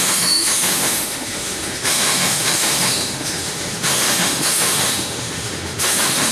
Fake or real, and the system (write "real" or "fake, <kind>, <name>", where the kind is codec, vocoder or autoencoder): fake, autoencoder, DAC-VAE